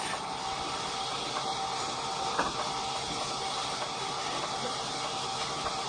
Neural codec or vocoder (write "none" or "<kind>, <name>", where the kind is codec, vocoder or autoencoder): none